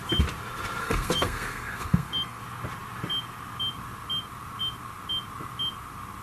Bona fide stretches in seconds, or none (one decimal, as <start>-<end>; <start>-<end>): 0.0-0.8; 2.4-6.2